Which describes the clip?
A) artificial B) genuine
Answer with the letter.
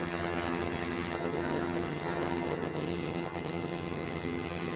A